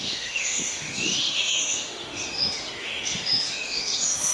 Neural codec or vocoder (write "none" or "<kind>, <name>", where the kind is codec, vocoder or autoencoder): autoencoder, DAC-VAE